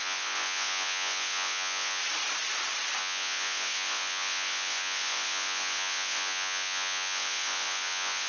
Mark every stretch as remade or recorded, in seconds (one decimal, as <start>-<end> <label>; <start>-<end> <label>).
0.0-2.0 remade; 2.0-3.0 recorded; 3.0-8.3 remade